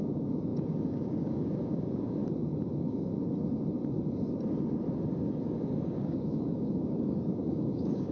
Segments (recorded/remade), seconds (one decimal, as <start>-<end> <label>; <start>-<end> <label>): 0.0-2.2 remade; 2.2-2.7 recorded; 2.7-3.1 remade; 3.1-5.8 recorded; 5.8-8.1 remade